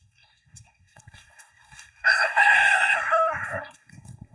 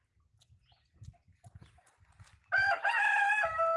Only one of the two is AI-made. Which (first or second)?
first